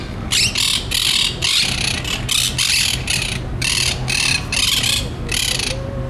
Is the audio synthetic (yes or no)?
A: no